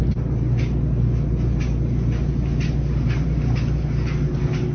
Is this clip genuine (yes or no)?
yes